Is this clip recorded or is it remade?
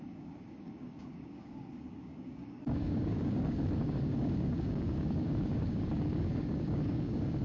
remade